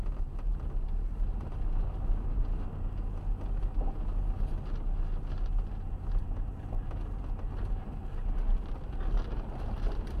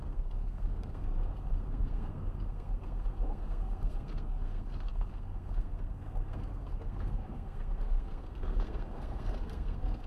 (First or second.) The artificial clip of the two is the second